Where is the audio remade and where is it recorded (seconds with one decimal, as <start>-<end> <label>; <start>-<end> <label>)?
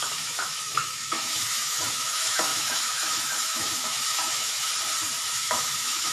0.0-4.7 remade; 4.7-5.3 recorded; 5.3-6.1 remade